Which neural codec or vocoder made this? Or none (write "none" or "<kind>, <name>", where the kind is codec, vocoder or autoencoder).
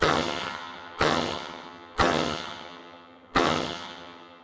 vocoder, HiFi-GAN